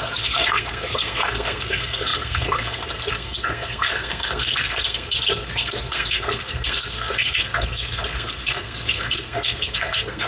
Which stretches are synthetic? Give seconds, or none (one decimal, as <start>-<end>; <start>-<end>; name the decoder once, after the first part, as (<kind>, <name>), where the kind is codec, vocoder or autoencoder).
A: 0.0-10.3 (codec, SNAC)